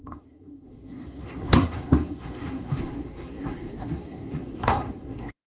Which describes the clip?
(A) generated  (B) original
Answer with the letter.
A